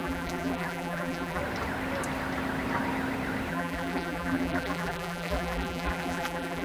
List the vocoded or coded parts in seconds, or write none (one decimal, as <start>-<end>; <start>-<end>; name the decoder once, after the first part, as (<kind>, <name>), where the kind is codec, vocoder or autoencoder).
0.0-1.4 (vocoder, BigVGAN v2); 3.5-6.6